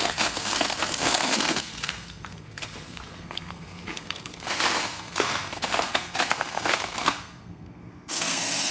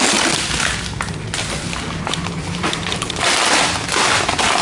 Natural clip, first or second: second